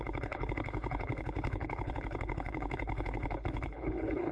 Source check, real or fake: fake